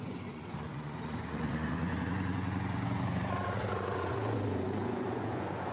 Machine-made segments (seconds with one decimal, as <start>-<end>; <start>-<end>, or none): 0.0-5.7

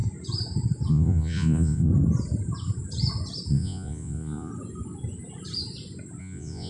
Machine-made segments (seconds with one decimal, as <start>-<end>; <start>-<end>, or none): 0.9-1.9; 3.5-4.5; 6.2-6.7

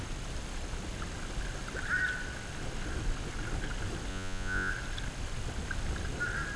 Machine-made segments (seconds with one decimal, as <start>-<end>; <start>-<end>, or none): 4.1-4.7